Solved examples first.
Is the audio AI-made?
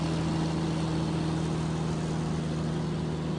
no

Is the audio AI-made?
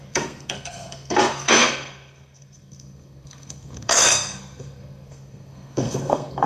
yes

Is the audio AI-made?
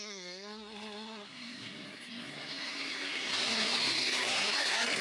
yes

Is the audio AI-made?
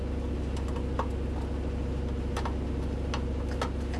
no